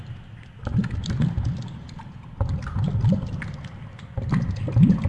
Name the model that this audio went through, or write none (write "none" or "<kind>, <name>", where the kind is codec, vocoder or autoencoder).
none